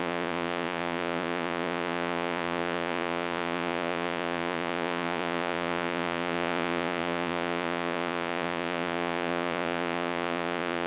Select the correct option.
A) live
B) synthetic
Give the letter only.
B